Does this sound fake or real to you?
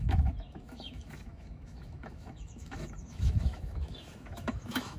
fake